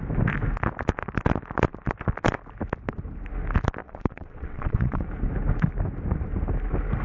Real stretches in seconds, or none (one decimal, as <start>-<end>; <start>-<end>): 0.0-3.8; 5.1-7.0